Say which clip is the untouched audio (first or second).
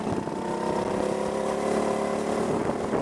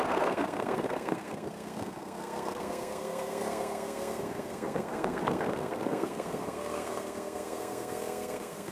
first